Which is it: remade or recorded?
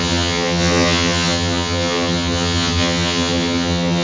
remade